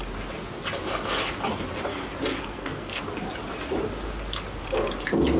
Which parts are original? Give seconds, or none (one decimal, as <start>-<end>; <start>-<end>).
0.0-2.3; 3.0-5.4